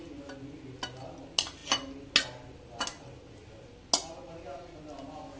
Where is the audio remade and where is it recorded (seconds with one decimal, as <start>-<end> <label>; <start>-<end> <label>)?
0.0-5.4 recorded